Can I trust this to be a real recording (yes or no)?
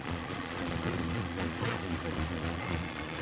no